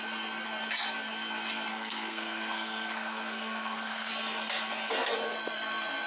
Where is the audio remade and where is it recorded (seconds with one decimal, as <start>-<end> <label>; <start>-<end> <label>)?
0.0-1.7 recorded; 1.7-4.1 remade; 4.1-6.1 recorded